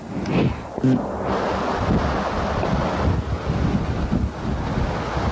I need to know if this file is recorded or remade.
recorded